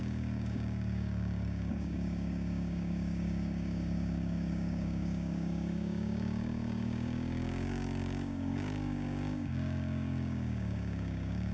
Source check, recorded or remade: remade